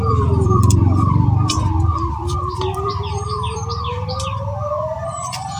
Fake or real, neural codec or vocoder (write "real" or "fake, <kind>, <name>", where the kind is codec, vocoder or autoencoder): fake, vocoder, BigVGAN v2